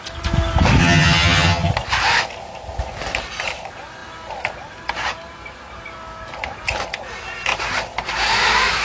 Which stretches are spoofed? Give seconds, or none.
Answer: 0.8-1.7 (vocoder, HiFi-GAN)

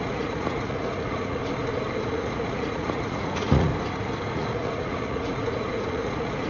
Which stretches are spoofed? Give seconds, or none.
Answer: 0.0-1.4 (vocoder, Vocos); 2.0-3.7; 4.3-6.5